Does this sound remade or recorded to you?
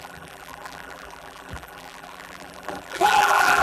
remade